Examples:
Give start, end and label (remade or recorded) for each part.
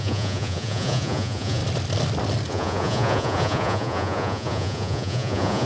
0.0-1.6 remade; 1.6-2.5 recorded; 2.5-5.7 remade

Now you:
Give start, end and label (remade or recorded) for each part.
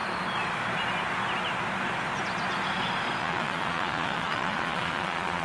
0.0-3.2 recorded; 3.2-5.4 remade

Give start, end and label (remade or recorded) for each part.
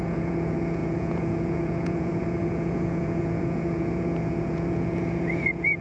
0.0-5.8 remade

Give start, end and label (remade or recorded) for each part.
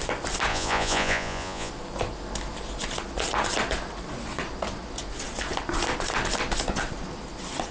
0.0-0.5 recorded; 0.5-1.7 remade; 1.7-7.7 recorded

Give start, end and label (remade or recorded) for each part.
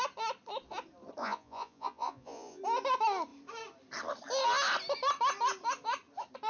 0.0-1.2 recorded; 1.2-2.6 remade; 2.6-6.5 recorded